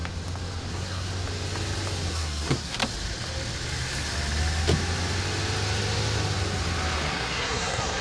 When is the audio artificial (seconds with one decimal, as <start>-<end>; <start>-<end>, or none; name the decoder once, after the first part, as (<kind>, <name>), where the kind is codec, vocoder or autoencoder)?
0.7-1.1 (codec, SNAC); 2.1-2.8; 7.1-8.0